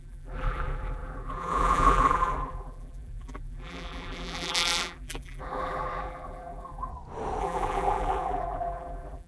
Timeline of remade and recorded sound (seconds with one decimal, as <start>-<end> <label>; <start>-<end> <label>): 0.0-6.9 remade; 6.9-7.4 recorded; 7.4-9.3 remade